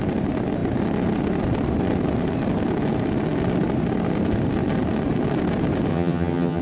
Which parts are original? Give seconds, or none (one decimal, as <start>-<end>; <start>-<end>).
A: 0.0-5.9